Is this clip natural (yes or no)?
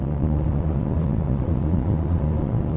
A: no